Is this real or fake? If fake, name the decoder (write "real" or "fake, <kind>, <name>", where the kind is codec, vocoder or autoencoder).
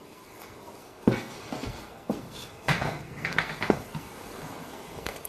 fake, codec, SNAC